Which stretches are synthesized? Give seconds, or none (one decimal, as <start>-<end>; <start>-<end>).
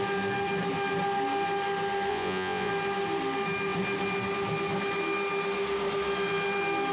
2.1-2.7